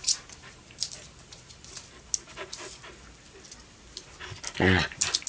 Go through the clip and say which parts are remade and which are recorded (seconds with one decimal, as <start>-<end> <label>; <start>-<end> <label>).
0.0-5.3 recorded